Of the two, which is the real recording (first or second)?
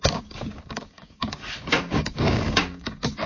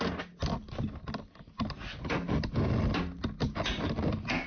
second